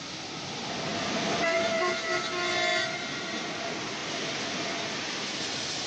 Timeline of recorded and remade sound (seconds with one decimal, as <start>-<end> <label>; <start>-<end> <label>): 0.0-5.9 recorded